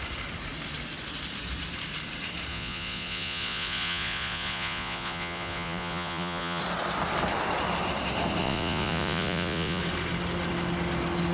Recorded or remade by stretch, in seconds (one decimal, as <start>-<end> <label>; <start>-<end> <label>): 0.0-2.5 recorded; 2.5-6.6 remade; 6.6-8.4 recorded; 8.4-9.8 remade; 9.8-11.3 recorded